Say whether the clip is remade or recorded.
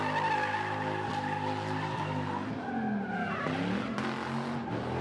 recorded